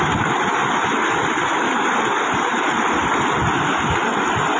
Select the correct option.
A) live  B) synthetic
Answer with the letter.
A